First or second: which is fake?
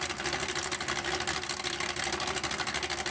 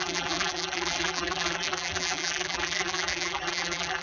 second